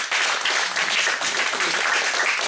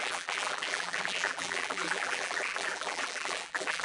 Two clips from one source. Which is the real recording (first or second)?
first